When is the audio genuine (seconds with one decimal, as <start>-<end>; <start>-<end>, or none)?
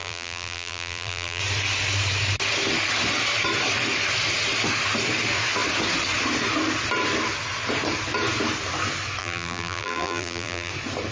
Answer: 1.4-9.2; 10.7-11.1